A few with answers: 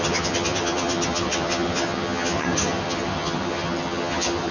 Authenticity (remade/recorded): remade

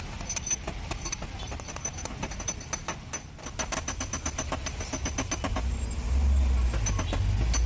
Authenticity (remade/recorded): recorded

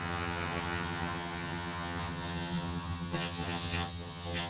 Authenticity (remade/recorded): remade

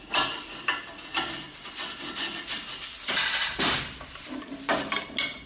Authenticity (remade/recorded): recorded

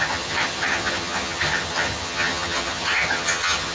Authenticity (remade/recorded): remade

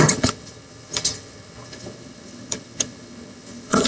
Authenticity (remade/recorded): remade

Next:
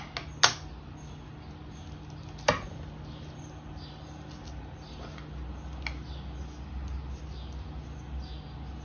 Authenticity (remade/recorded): recorded